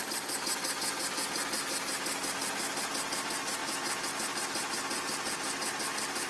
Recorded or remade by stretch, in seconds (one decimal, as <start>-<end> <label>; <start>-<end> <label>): 0.0-6.3 recorded